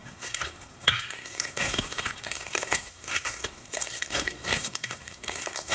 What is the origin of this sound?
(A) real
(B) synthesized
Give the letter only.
B